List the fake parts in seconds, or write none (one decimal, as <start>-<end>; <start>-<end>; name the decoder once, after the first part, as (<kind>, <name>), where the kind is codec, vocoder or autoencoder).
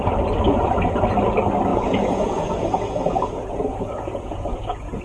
1.7-5.0 (vocoder, Vocos)